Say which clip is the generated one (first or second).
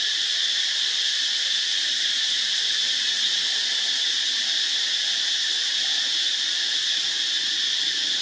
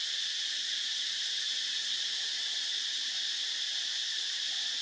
second